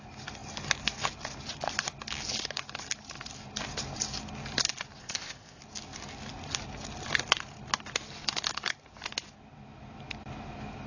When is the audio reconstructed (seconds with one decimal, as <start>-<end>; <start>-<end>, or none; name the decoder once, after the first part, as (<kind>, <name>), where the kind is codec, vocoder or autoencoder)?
5.0-5.6 (codec, ZipCodec)